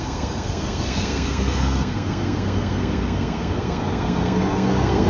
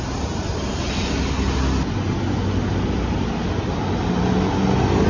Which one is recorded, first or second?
second